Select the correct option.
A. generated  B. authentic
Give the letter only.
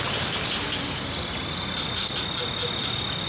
B